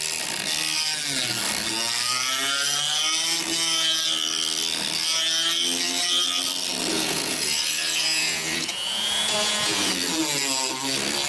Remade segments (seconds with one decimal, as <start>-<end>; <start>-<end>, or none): 6.9-9.9